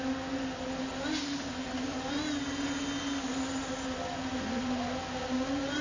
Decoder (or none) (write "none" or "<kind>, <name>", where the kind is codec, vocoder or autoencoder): none